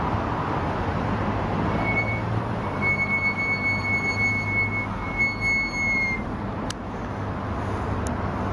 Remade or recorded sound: recorded